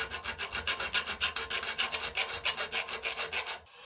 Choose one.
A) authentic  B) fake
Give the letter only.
A